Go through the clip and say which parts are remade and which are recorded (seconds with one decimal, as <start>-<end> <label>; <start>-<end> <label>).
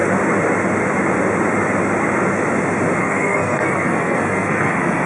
0.0-3.0 recorded; 3.0-5.1 remade